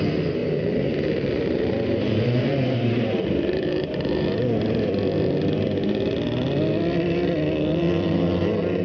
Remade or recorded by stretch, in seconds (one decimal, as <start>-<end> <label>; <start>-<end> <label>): 0.0-0.4 recorded; 0.4-4.9 remade; 4.9-8.8 recorded